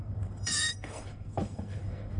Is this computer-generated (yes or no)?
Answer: yes